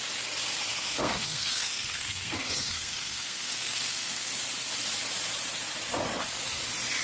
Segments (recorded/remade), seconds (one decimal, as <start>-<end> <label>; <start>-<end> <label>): 0.0-0.7 recorded; 0.7-4.3 remade; 4.3-7.0 recorded